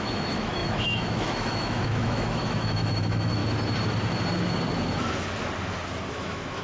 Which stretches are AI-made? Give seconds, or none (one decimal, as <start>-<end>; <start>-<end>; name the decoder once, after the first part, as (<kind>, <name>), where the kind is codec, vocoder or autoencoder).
0.0-3.4 (autoencoder, DAC-VAE); 6.1-6.6